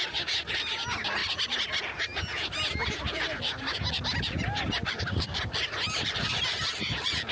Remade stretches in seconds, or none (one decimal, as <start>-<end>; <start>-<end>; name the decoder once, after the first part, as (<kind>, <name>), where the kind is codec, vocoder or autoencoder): none